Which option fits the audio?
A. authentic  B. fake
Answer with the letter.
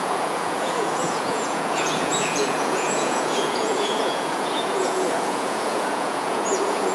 B